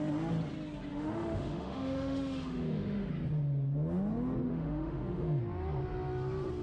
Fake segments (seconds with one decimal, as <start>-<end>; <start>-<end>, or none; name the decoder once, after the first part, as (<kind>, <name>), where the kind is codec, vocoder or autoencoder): 0.9-3.1 (autoencoder, DAC-VAE); 4.5-5.4